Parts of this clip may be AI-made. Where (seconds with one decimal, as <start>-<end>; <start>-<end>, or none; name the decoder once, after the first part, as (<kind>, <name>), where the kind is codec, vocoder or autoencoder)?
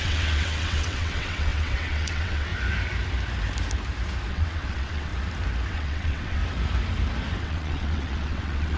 0.0-2.5 (vocoder, WaveNeXt); 4.3-5.1; 5.7-6.4; 7.4-8.8